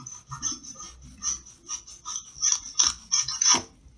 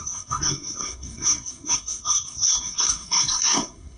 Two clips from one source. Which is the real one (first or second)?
first